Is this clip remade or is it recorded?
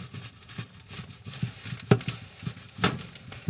recorded